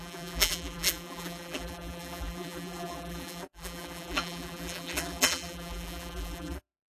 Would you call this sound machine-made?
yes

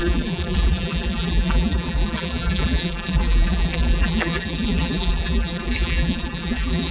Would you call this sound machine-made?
yes